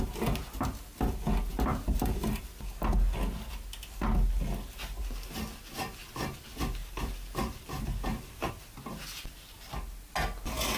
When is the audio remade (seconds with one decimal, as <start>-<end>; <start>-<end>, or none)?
1.7-2.4; 6.8-8.5

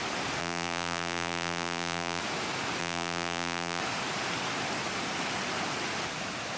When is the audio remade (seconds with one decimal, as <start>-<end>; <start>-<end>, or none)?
0.4-2.2; 2.8-3.8

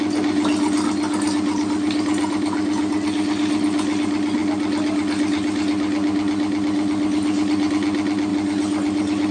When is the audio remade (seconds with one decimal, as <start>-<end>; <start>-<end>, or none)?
8.3-9.3

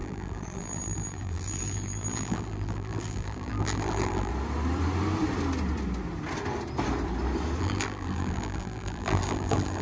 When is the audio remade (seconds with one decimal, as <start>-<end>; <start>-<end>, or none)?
0.0-4.3; 7.6-9.8

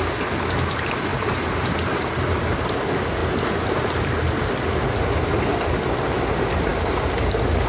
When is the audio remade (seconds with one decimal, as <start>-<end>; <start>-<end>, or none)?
1.1-2.6; 3.2-4.2

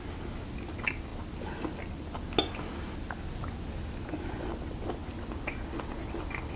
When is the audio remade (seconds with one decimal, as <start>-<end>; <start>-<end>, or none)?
none

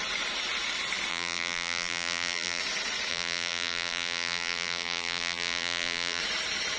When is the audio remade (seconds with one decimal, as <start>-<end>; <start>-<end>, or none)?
1.1-2.6; 3.1-6.2